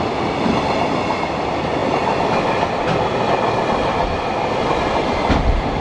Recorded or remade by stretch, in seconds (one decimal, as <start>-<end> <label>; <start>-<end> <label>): 0.0-5.8 recorded